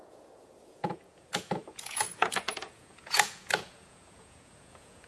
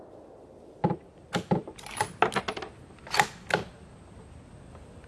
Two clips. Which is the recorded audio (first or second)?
second